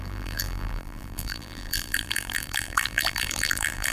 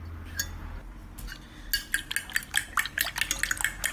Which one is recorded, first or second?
second